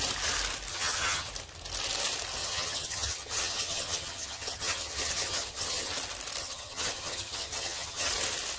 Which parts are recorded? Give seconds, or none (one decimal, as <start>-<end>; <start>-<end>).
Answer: 0.0-0.7; 1.3-2.4; 5.9-6.4; 8.1-8.6